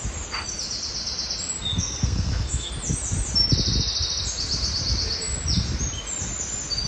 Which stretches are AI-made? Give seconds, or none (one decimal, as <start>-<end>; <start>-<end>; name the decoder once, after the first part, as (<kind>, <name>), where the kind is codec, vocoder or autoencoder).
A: 1.8-2.7 (codec, SNAC)